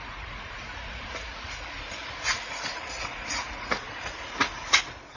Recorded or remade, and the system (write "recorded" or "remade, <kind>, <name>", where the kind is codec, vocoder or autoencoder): remade, vocoder, Vocos